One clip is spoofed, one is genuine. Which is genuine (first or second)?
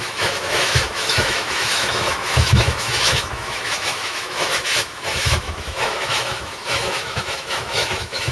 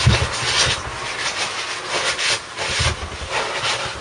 second